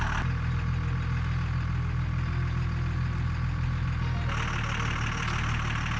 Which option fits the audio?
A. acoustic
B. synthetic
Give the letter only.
A